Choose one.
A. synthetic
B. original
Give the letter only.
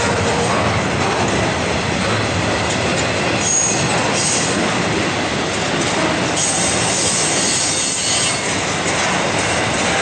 B